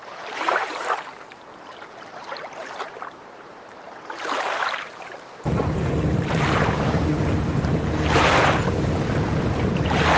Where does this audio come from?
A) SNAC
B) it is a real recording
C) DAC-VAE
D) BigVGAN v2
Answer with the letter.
D